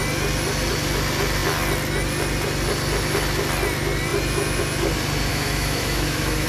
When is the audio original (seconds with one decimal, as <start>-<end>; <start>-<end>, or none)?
0.0-5.3